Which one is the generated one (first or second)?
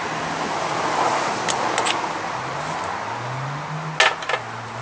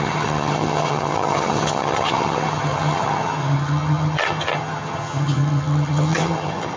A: second